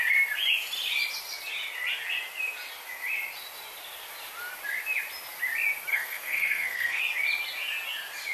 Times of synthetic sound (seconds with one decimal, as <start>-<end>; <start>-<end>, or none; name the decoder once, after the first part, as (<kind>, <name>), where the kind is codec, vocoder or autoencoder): 5.9-7.0 (codec, SNAC)